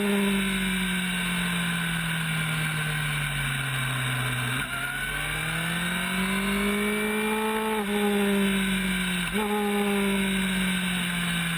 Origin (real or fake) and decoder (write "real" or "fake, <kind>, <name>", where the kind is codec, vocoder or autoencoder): real